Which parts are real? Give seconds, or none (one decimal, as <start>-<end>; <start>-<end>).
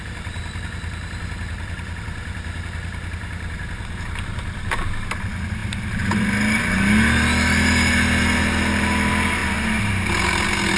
0.0-10.8